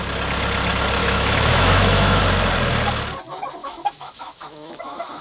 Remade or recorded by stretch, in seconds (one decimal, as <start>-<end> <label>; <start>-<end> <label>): 0.0-1.0 recorded; 1.0-2.2 remade; 2.2-3.6 recorded; 3.6-5.2 remade

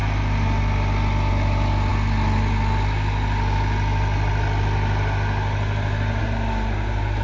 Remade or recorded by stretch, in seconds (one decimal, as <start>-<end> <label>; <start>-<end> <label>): 0.0-7.2 recorded

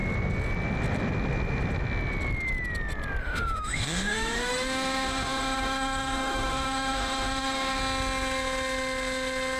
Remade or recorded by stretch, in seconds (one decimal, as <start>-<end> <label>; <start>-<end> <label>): 0.0-3.2 recorded; 3.2-7.8 remade; 7.8-9.6 recorded